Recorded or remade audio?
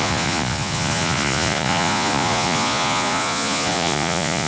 remade